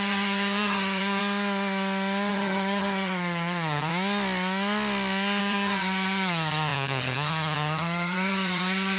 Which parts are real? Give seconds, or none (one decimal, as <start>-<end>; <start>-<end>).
1.2-2.3; 3.9-5.4